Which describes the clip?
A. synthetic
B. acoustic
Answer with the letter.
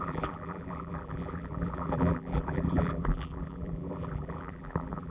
A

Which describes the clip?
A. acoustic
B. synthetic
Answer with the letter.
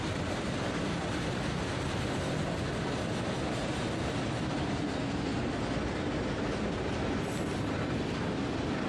A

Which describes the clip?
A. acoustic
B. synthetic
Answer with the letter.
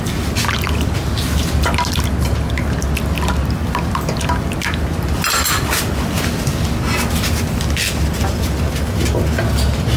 A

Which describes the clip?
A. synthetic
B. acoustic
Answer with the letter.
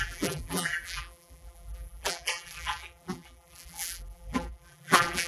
A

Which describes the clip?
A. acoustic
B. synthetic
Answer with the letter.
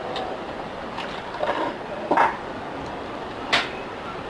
B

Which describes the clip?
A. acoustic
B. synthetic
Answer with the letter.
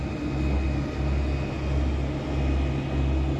A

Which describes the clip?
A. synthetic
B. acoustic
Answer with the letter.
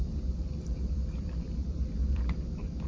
A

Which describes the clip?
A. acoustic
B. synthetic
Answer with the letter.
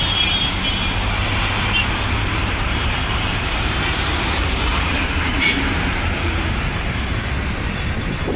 B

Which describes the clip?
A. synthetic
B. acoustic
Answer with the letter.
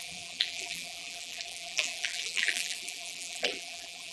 A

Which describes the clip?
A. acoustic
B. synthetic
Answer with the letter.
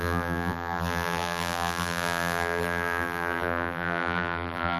B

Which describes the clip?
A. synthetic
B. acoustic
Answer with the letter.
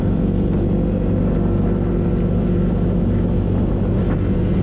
B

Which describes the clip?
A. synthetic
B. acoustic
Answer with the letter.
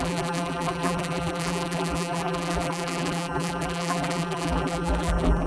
A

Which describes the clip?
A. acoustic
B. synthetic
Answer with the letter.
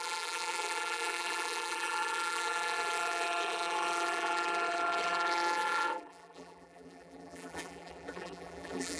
B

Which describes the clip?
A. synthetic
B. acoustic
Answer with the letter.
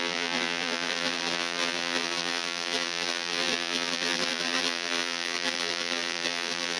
A